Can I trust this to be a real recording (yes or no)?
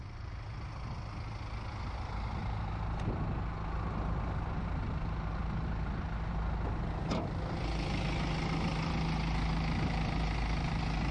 yes